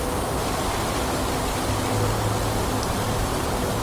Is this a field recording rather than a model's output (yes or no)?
yes